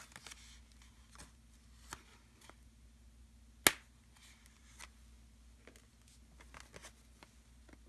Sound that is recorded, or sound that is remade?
recorded